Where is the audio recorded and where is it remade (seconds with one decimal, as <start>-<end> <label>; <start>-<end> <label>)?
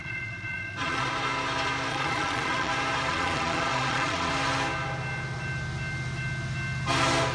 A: 0.0-1.1 remade; 1.1-1.9 recorded; 1.9-2.7 remade; 2.7-3.1 recorded; 3.1-4.3 remade; 4.3-7.3 recorded